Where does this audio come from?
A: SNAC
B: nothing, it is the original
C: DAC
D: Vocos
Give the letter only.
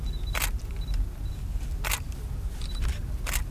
B